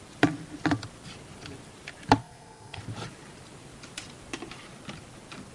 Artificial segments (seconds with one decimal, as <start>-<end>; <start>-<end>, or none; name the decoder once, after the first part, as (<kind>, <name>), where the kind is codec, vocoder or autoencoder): 2.2-2.8 (codec, SNAC)